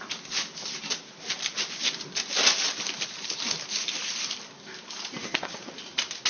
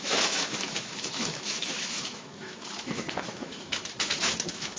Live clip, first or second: first